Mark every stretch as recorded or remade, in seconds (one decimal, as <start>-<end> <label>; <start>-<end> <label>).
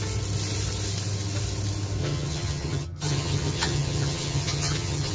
0.0-2.0 recorded; 2.0-5.1 remade